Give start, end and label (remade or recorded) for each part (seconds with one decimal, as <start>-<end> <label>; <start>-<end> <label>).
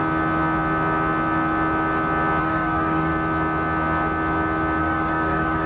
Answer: 0.0-2.4 recorded; 2.4-3.1 remade; 3.1-4.8 recorded; 4.8-5.7 remade